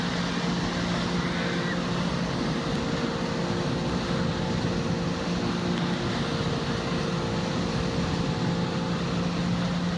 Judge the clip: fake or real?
real